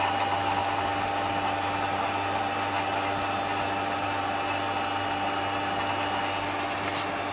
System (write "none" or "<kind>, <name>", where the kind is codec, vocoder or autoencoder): none